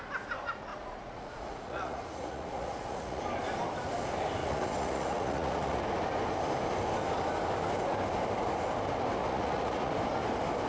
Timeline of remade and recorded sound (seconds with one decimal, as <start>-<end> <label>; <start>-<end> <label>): 0.0-0.7 recorded; 0.7-3.2 remade; 3.2-4.4 recorded; 4.4-5.8 remade; 5.8-9.2 recorded; 9.2-9.9 remade; 9.9-10.7 recorded